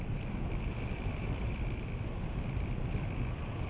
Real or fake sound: real